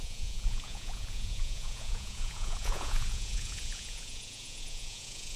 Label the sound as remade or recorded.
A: remade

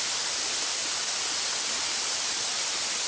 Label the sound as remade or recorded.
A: recorded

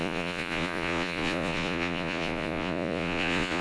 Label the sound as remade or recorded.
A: remade